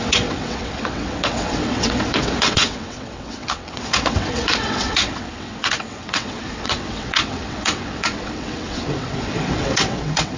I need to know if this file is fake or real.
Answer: fake